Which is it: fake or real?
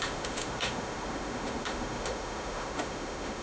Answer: fake